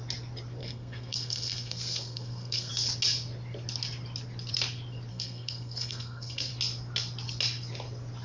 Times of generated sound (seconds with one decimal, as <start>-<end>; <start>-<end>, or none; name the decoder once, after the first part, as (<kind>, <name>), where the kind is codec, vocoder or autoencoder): 0.6-2.7 (codec, SNAC); 5.1-6.5